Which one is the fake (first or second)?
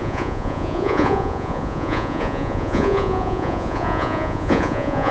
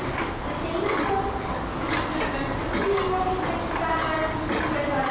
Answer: first